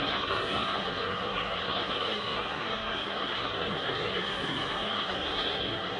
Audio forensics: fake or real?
fake